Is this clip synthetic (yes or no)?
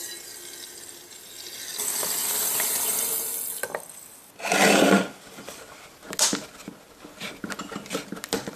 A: no